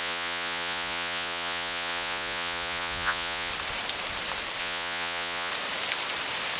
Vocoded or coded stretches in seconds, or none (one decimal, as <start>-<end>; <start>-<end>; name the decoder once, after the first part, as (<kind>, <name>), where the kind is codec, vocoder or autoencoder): 0.0-3.5 (vocoder, Vocos); 4.6-5.5